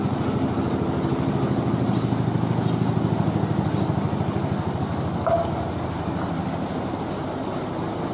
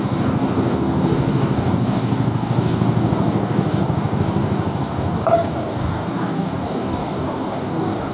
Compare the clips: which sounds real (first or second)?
first